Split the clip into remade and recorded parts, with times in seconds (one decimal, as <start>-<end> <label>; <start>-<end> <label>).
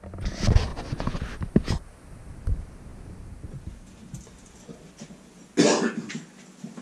0.0-0.7 recorded; 0.7-1.2 remade; 1.2-6.8 recorded